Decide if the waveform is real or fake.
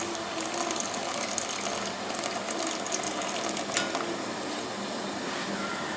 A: real